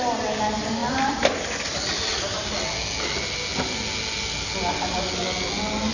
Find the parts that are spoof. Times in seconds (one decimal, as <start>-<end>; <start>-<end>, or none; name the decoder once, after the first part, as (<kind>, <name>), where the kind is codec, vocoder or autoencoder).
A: 0.8-2.6 (vocoder, BigVGAN v2)